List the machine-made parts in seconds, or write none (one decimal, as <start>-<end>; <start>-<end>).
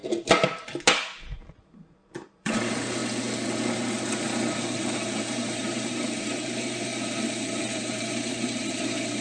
1.3-3.0; 4.8-6.9; 7.6-9.2